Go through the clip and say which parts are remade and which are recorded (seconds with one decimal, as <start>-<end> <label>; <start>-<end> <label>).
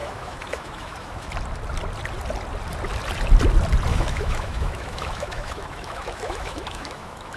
0.0-1.3 remade; 1.3-3.9 recorded; 3.9-7.4 remade